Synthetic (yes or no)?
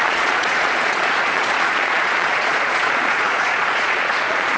yes